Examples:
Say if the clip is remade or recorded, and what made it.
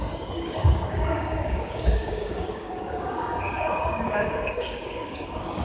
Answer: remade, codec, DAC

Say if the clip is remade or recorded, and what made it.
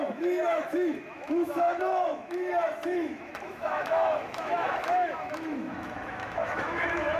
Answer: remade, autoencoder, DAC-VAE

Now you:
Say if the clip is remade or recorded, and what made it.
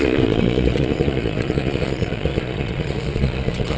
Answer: remade, vocoder, Vocos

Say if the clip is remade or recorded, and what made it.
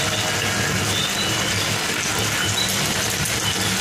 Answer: recorded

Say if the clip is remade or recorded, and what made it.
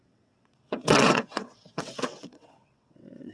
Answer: remade, vocoder, WaveNeXt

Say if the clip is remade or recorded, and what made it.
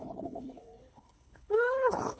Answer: remade, codec, HILCodec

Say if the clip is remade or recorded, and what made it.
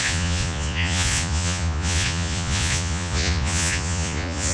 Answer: remade, vocoder, Vocos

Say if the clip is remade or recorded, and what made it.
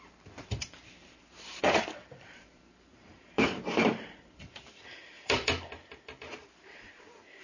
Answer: remade, vocoder, BigVGAN v2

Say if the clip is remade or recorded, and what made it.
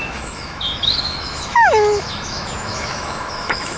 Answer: remade, autoencoder, DAC-VAE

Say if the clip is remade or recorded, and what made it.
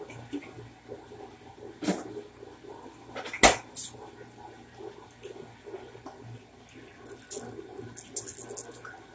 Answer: recorded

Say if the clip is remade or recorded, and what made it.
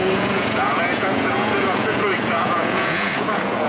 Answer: remade, vocoder, Vocos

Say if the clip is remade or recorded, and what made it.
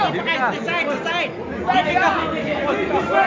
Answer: recorded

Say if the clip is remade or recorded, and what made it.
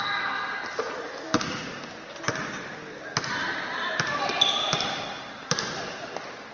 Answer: recorded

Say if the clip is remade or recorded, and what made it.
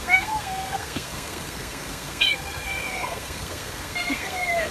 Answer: remade, codec, SNAC